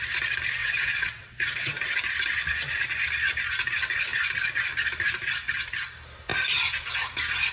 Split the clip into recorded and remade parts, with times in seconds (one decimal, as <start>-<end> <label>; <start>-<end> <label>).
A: 0.0-0.6 recorded; 0.6-1.7 remade; 1.7-7.5 recorded